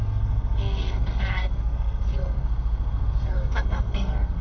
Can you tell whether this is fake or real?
fake